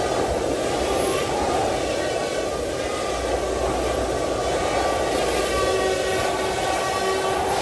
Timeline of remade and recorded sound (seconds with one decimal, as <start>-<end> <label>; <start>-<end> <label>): 0.0-7.6 recorded